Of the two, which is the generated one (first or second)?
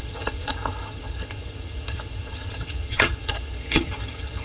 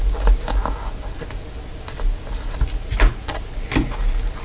first